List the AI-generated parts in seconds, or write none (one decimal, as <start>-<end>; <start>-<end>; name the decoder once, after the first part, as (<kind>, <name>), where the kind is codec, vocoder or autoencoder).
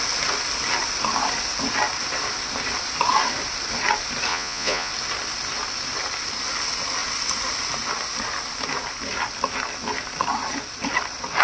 4.3-4.9 (vocoder, Vocos)